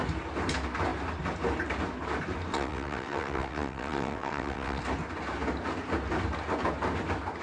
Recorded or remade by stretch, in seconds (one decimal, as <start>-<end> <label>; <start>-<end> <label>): 0.0-2.5 recorded; 2.5-4.8 remade; 4.8-7.4 recorded